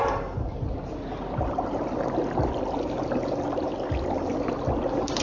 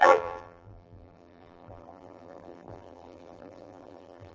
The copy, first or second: second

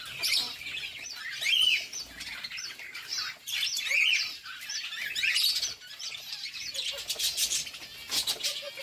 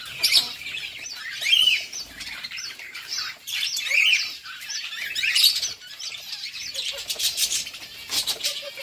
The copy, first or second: second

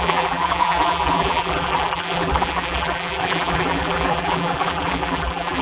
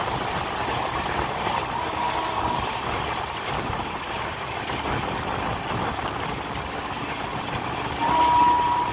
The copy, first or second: first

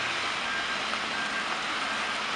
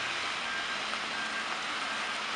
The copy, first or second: first